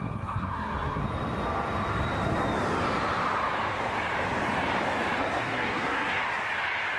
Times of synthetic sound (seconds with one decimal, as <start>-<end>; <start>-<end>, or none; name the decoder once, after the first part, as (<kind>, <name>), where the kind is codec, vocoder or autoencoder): 0.0-1.0 (codec, SNAC); 5.2-6.2